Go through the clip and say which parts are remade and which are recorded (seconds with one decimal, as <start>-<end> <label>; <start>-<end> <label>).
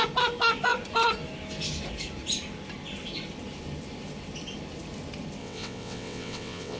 0.0-5.4 recorded; 5.4-6.8 remade